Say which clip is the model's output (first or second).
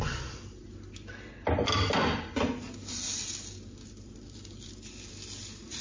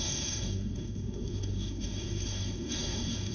second